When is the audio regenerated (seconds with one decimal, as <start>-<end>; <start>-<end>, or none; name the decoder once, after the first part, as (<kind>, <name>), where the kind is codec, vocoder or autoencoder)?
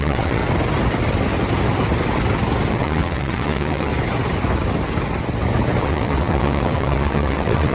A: 0.0-0.4 (vocoder, WaveNeXt); 2.7-3.9; 5.8-7.7